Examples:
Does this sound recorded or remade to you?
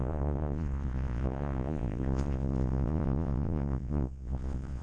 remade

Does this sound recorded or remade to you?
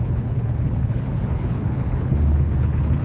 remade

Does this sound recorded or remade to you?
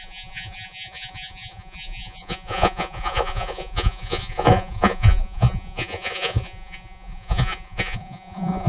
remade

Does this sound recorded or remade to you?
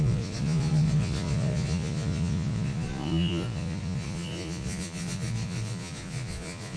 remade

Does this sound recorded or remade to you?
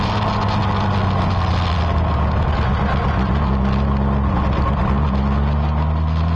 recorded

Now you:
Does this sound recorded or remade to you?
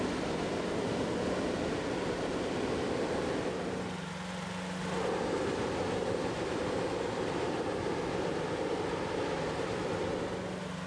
recorded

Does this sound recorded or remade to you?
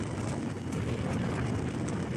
recorded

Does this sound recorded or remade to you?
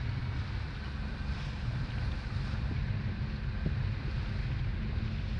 recorded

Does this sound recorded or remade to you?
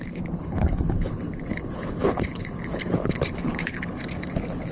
remade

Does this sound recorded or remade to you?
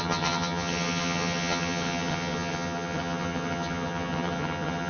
remade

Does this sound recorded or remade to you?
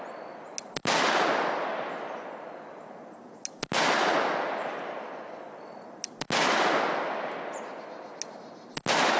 recorded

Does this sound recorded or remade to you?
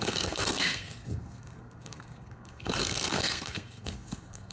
remade